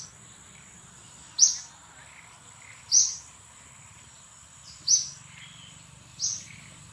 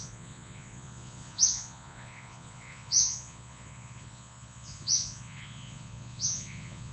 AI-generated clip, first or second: second